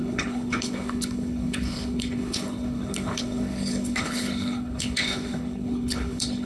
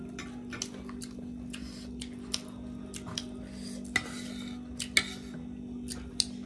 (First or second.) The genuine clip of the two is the second